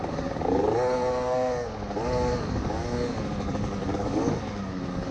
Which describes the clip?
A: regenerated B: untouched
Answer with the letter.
A